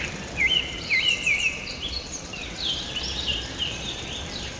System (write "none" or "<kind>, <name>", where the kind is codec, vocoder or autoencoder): vocoder, BigVGAN v2